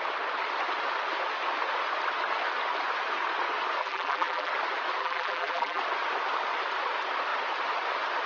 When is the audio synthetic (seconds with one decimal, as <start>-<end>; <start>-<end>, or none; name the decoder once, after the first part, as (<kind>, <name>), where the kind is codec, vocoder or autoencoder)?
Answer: 3.8-4.5 (vocoder, BigVGAN v2); 5.0-5.8